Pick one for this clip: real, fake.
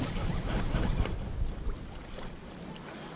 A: real